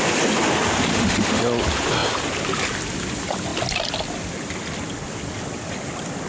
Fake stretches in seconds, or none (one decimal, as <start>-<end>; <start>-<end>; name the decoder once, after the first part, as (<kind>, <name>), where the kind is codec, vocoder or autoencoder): 0.9-1.4 (autoencoder, DAC-VAE)